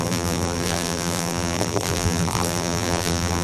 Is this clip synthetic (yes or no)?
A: yes